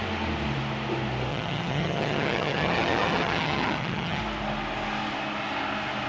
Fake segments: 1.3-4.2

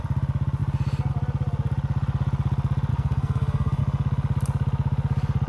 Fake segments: 2.9-3.8

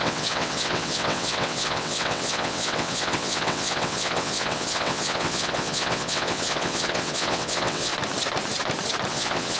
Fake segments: 0.0-7.9; 9.1-9.6

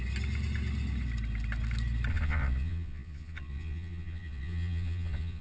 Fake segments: 2.1-5.4

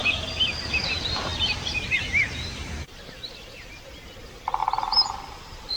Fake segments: none

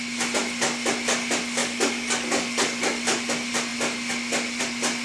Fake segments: 1.6-3.0